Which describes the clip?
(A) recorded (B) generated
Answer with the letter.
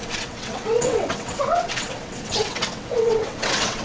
B